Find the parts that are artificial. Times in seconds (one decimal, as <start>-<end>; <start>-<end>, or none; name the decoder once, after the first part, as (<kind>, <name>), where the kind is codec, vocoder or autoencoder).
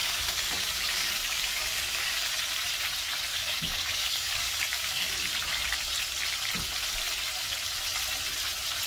0.0-2.3 (codec, DAC); 3.3-5.1